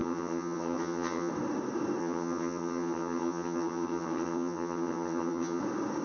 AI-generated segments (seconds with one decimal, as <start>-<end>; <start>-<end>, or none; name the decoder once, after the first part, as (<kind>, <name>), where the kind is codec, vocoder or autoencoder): 0.0-1.3 (vocoder, HiFi-GAN); 2.0-5.6